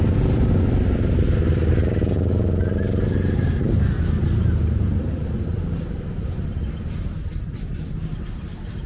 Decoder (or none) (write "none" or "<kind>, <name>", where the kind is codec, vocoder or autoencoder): none